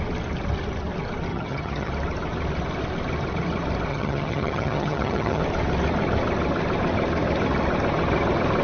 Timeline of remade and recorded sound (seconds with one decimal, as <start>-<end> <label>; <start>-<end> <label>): 0.0-1.3 recorded; 1.3-1.9 remade; 1.9-3.9 recorded; 3.9-5.4 remade; 5.4-8.6 recorded